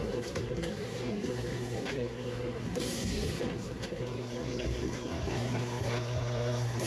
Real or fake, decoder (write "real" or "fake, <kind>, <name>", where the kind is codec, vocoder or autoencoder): fake, codec, SNAC